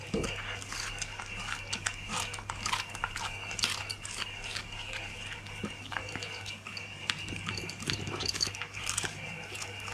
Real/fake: fake